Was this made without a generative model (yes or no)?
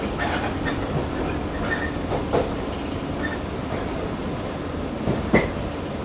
yes